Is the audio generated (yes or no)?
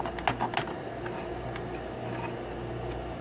no